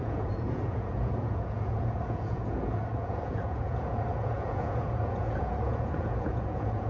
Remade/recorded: remade